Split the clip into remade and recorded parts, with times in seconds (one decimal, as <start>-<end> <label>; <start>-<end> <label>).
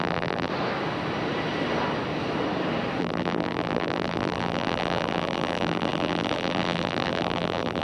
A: 0.0-0.5 remade; 0.5-3.0 recorded; 3.0-7.8 remade